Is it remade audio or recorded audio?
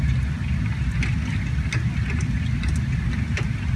recorded